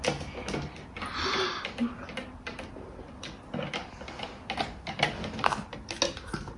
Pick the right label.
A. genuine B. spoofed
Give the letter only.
A